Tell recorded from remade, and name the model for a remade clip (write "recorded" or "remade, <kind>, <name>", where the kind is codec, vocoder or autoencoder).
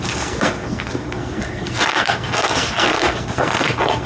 remade, codec, SNAC